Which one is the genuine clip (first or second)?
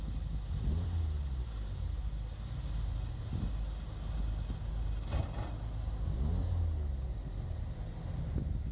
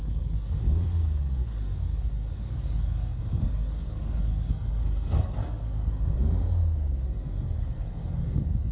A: first